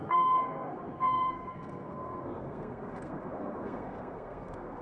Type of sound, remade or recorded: remade